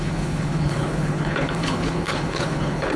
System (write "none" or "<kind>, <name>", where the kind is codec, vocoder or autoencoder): codec, HILCodec